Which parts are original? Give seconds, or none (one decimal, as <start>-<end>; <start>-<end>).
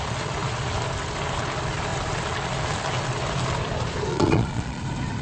0.0-4.1; 4.8-5.2